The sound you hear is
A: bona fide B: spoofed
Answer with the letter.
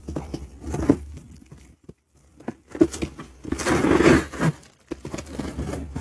A